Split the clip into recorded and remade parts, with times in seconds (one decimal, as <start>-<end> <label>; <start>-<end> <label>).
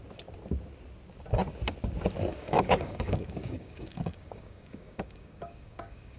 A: 0.0-2.3 recorded; 2.3-6.2 remade